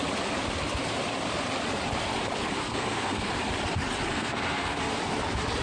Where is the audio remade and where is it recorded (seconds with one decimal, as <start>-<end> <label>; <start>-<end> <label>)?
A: 0.0-2.6 recorded; 2.6-3.3 remade; 3.3-4.1 recorded; 4.1-5.0 remade; 5.0-5.6 recorded